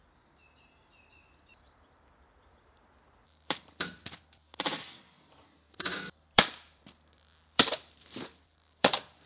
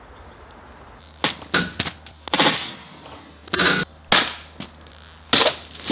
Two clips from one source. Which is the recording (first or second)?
second